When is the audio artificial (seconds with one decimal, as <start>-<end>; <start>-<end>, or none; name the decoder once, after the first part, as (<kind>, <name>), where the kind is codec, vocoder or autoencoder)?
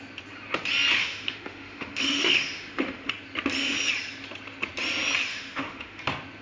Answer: 1.0-3.1 (autoencoder, DAC-VAE); 5.3-6.0